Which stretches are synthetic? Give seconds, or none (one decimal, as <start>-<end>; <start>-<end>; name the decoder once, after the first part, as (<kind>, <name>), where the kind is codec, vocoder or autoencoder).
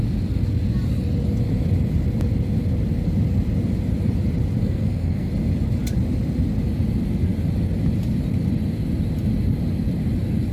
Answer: 4.6-5.3 (codec, SNAC)